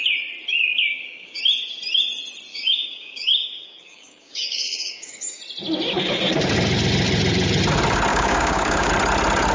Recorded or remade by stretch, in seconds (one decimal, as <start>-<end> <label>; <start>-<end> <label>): 0.0-0.7 recorded; 0.7-1.4 remade; 1.4-2.5 recorded; 2.5-5.4 remade; 5.4-8.1 recorded; 8.1-8.9 remade; 8.9-9.5 recorded